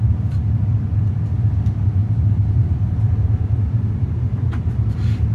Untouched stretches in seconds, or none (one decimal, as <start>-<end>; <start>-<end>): 0.0-2.0